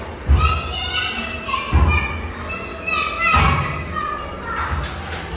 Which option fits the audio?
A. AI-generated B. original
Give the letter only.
B